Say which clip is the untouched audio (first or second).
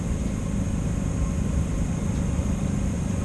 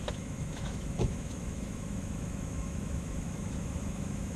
first